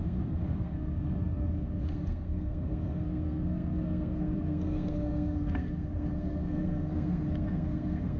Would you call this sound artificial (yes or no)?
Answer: yes